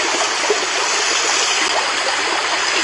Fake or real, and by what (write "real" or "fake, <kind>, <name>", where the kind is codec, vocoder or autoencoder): real